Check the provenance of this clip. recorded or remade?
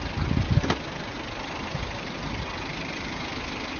recorded